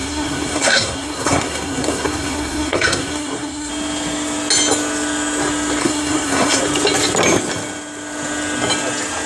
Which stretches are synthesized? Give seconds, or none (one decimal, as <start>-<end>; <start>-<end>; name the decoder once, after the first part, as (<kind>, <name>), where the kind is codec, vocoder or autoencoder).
0.0-3.7 (codec, SNAC); 5.8-6.6